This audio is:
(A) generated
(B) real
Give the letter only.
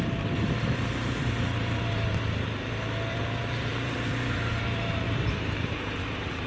A